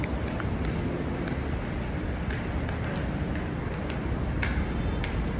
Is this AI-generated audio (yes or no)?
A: no